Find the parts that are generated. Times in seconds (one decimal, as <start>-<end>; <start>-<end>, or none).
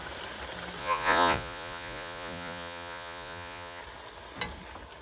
0.8-3.8